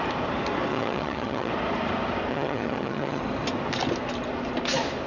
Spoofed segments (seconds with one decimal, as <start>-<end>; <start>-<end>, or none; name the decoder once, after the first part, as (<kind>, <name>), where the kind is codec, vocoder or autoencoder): 0.7-1.5 (vocoder, HiFi-GAN); 2.3-3.2